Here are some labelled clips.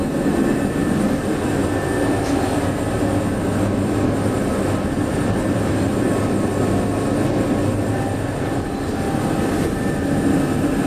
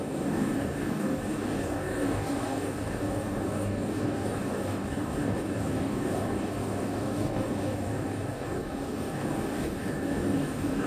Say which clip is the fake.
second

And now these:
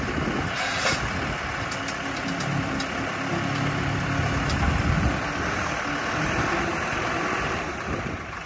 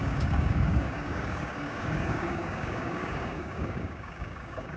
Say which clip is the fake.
second